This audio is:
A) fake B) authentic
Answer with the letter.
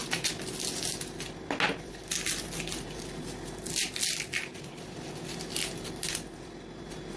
B